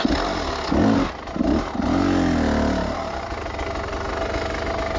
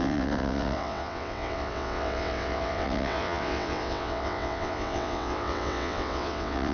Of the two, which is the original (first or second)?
first